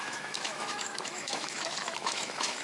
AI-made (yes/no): yes